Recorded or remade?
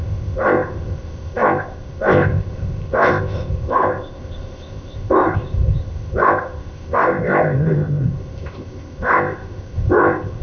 remade